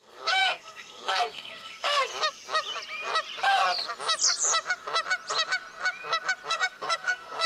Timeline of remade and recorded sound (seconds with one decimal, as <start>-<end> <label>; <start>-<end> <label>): 0.0-2.1 remade; 2.1-6.5 recorded; 6.5-7.5 remade